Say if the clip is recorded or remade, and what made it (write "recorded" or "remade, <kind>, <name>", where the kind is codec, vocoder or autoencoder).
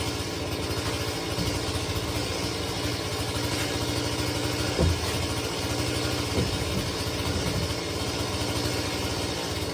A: recorded